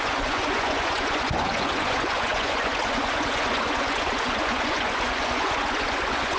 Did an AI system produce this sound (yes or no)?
yes